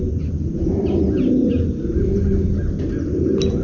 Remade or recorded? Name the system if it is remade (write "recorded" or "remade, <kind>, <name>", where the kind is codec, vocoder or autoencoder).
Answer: recorded